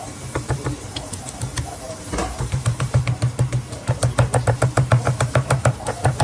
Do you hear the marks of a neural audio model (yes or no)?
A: yes